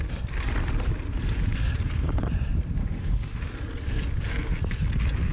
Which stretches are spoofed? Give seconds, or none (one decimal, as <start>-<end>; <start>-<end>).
2.8-3.4